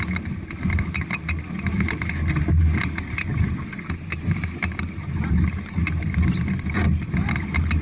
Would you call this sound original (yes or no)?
yes